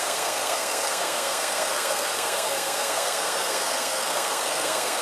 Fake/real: fake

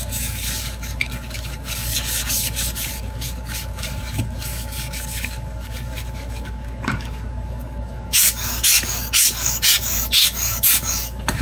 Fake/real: fake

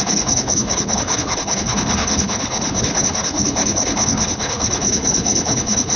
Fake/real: fake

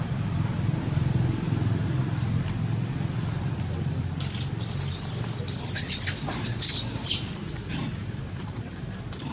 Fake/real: fake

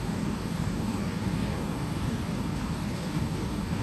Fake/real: fake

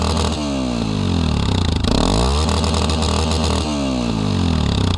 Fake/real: real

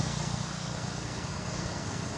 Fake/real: fake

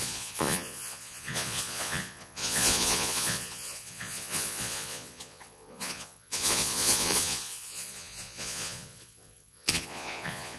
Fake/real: fake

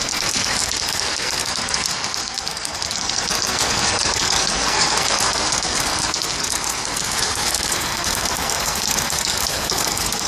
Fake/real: fake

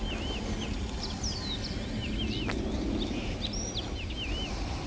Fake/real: real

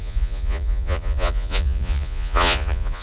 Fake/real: fake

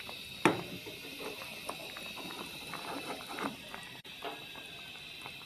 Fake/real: real